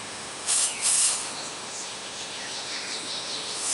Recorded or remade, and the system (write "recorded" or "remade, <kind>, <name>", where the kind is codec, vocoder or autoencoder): remade, autoencoder, DAC-VAE